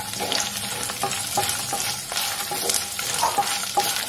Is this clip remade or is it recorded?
recorded